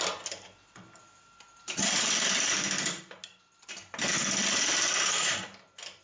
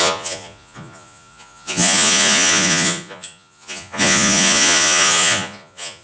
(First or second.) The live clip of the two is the first